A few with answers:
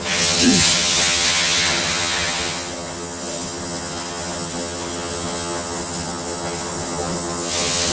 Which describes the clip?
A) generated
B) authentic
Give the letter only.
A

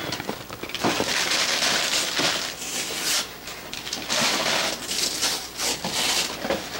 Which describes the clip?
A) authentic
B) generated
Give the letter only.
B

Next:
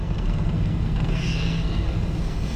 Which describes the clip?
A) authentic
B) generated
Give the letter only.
B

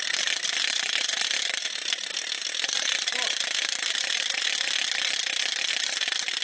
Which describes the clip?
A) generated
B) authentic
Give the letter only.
B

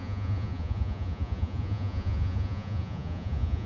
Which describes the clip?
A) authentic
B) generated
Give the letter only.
B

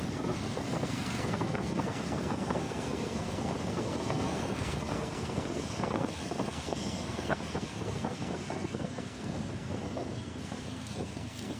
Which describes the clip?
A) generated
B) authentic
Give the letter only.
A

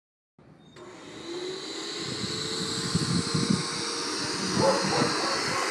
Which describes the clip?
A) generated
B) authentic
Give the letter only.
B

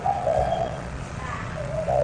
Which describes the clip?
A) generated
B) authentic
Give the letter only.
A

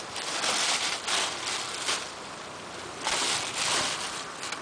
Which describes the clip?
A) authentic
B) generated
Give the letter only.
A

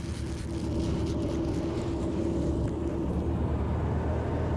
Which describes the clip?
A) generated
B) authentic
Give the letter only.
B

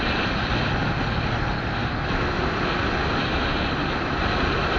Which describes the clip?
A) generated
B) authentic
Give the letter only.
B